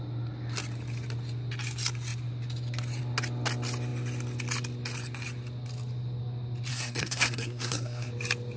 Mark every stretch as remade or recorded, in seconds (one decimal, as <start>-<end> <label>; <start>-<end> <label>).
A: 0.0-6.7 recorded; 6.7-8.1 remade; 8.1-8.6 recorded